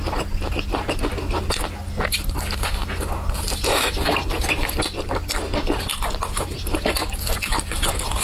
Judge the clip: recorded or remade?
recorded